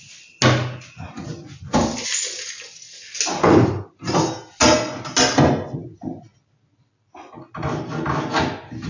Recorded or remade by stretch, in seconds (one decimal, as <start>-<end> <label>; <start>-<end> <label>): 0.0-8.9 recorded